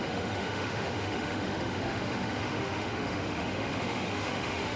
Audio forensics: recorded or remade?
remade